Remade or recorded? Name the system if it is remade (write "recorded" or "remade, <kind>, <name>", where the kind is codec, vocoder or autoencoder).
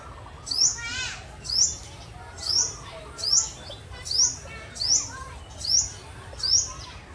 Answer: recorded